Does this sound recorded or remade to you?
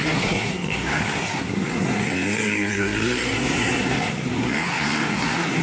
remade